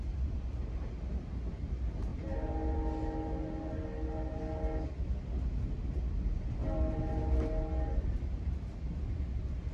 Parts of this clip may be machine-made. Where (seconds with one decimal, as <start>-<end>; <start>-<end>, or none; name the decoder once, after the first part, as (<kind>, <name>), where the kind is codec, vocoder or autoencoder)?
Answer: none